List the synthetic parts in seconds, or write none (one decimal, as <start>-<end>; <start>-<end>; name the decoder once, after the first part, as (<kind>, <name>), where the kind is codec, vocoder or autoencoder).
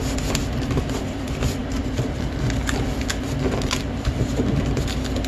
1.6-3.0 (vocoder, BigVGAN v2)